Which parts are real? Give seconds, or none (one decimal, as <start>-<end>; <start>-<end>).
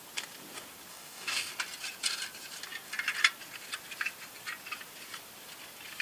0.0-0.9; 1.5-6.0